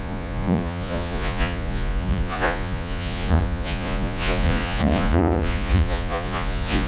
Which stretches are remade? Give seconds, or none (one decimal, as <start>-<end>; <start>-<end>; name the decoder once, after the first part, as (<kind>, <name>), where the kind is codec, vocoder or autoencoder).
0.0-6.9 (vocoder, Vocos)